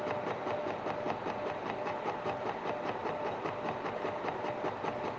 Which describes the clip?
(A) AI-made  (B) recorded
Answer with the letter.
B